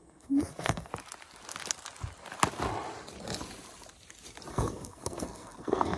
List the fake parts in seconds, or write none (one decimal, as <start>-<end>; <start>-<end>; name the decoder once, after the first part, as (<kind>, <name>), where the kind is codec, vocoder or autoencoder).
0.0-0.9 (codec, SNAC); 4.5-6.0